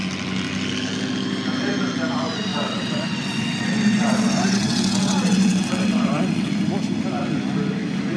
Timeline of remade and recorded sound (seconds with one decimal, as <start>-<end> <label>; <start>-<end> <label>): 0.0-2.5 recorded; 2.5-6.5 remade; 6.5-8.2 recorded